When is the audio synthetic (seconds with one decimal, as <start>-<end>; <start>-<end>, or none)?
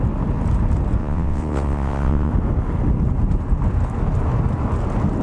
1.0-2.3